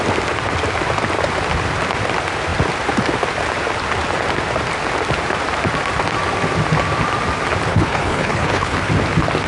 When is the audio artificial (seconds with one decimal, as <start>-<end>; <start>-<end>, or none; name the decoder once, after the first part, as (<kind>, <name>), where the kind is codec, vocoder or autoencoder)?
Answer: 7.7-8.9 (codec, HILCodec)